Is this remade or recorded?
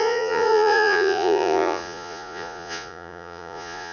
remade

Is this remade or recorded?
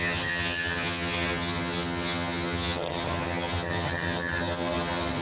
remade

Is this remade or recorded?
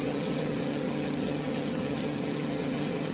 remade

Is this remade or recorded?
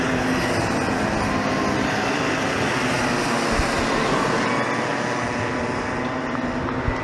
recorded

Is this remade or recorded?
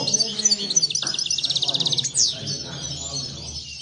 recorded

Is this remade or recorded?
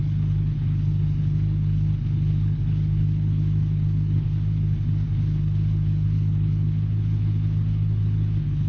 remade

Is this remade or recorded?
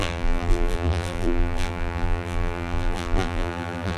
remade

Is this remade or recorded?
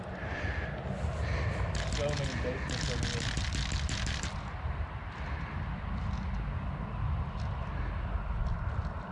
recorded